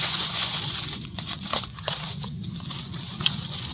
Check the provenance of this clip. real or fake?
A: fake